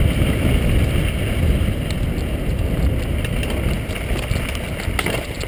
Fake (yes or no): no